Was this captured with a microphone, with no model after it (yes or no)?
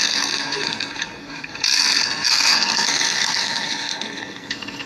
no